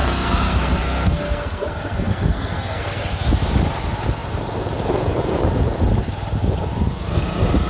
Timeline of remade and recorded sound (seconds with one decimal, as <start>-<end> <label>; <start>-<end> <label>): 0.0-3.0 remade; 3.0-7.7 recorded